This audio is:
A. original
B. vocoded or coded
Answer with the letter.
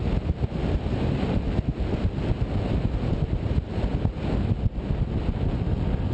A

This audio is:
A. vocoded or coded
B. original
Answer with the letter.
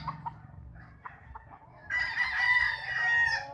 B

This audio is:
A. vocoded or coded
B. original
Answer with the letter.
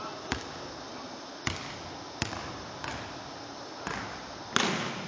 B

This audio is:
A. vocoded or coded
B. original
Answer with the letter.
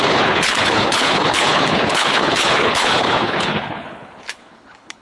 A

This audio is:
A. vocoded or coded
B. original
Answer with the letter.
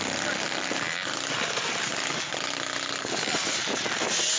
B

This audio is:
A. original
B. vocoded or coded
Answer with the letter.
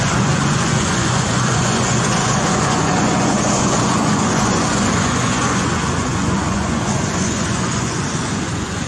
B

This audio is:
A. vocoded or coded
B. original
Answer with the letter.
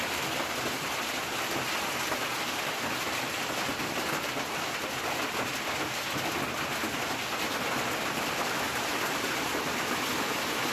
B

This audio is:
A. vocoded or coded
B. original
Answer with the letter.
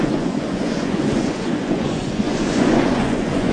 A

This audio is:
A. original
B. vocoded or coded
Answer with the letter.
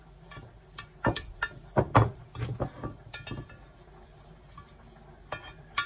A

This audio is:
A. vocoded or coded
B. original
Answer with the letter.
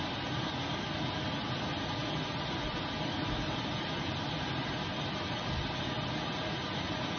B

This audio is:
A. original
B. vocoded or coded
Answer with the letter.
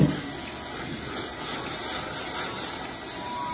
A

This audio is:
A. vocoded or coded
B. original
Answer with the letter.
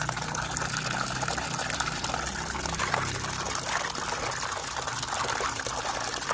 B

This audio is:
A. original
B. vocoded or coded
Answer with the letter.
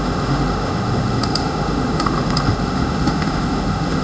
B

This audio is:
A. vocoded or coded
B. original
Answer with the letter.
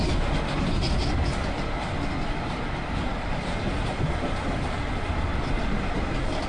A